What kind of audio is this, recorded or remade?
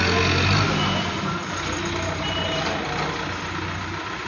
recorded